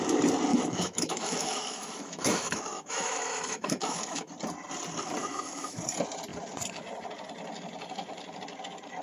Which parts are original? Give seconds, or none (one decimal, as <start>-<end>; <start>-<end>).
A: 0.0-0.5; 4.3-5.2; 5.8-9.0